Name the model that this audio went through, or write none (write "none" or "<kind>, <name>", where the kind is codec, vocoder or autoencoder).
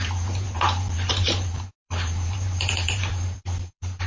vocoder, BigVGAN v2